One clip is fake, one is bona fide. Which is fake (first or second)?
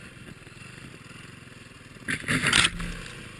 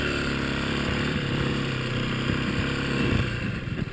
second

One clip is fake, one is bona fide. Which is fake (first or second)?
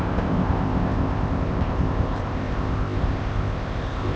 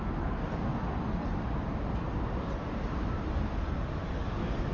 first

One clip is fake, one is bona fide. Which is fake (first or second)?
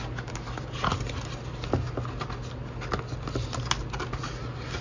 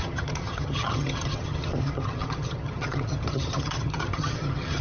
second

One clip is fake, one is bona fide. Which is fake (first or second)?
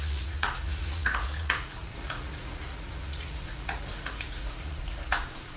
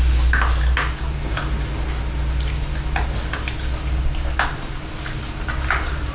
first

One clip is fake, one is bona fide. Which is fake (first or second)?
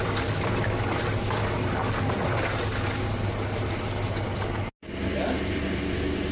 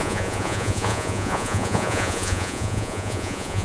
second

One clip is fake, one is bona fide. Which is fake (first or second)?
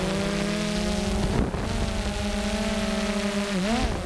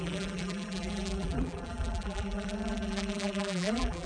second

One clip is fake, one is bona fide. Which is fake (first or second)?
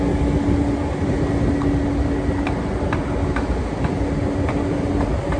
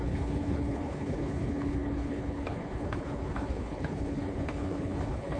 second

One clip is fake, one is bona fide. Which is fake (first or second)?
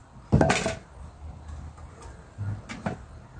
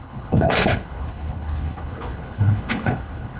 second